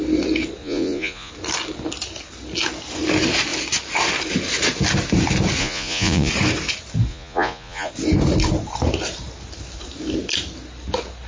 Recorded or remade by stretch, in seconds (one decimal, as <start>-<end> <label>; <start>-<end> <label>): 0.0-0.6 recorded; 0.6-1.3 remade; 1.3-5.6 recorded; 5.6-6.3 remade; 6.3-7.1 recorded; 7.1-7.9 remade; 7.9-11.3 recorded